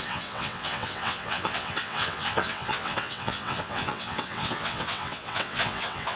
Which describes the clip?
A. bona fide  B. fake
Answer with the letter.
B